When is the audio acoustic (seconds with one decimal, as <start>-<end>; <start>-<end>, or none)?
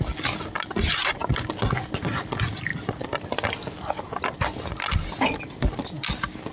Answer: 0.0-6.5